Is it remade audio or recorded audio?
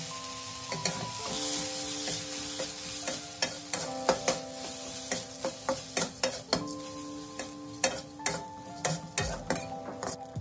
recorded